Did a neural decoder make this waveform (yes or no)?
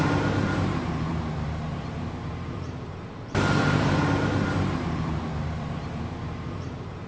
yes